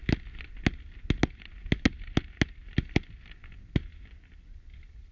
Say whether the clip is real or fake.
real